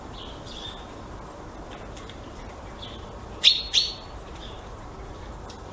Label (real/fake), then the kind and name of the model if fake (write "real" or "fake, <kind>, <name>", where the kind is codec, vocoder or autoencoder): real